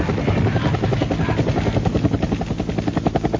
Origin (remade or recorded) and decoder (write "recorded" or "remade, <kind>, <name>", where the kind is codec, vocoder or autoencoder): recorded